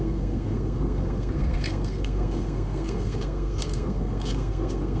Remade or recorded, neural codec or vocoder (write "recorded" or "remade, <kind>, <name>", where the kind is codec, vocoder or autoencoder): remade, codec, SNAC